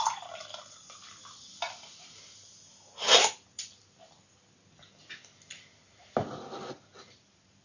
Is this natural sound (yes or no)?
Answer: yes